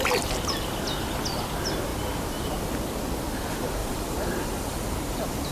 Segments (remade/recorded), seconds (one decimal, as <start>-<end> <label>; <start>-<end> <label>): 0.0-3.8 recorded; 3.8-5.5 remade